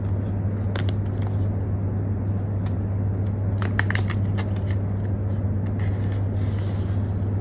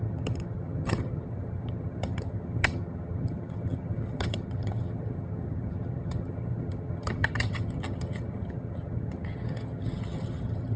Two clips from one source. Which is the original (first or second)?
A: first